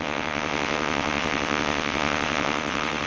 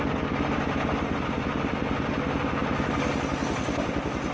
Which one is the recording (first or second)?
second